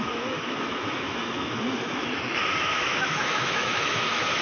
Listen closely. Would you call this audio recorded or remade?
remade